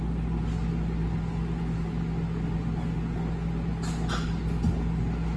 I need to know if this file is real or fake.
real